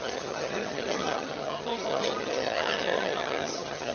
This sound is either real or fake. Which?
fake